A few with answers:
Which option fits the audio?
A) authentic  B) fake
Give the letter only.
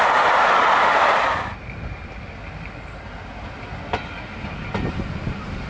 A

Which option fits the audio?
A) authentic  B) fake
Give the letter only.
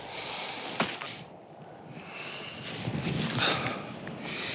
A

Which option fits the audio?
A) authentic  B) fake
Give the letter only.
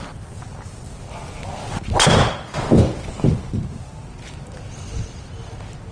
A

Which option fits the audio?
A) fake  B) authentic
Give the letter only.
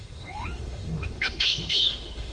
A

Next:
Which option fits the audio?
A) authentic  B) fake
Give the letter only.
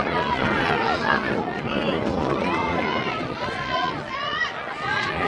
B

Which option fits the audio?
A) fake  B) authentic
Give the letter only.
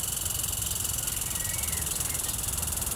B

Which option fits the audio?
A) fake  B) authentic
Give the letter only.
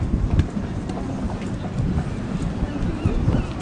B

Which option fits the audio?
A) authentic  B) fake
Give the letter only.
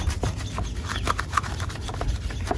A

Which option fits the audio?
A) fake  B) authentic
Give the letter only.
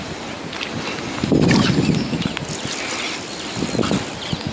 B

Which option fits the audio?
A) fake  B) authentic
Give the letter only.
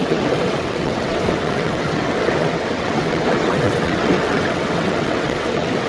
A